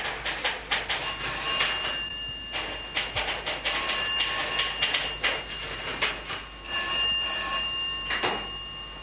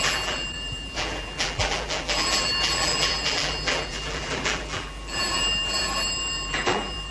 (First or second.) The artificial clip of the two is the second